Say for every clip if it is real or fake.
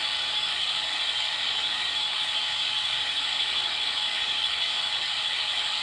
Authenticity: fake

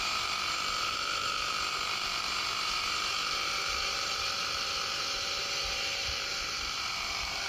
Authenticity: fake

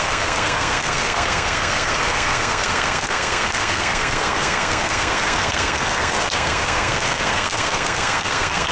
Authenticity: fake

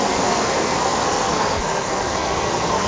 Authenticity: fake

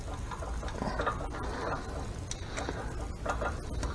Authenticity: real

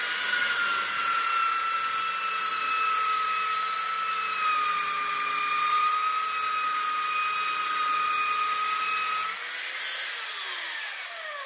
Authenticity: real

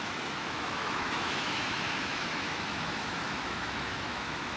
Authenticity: fake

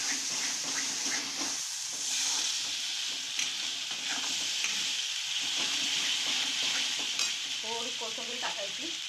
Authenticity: fake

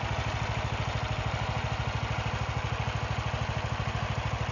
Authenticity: real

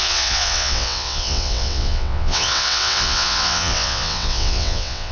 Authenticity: fake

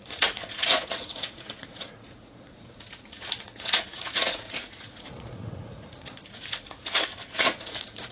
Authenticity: fake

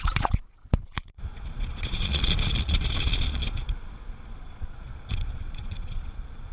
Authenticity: fake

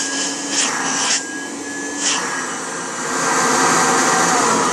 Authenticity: real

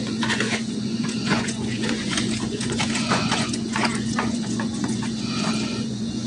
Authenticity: fake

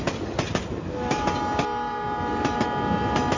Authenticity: real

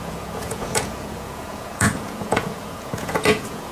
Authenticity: fake